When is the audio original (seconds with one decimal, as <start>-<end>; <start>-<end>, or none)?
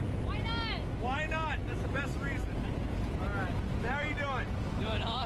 0.0-5.3